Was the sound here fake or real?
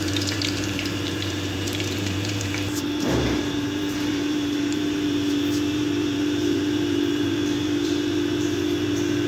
fake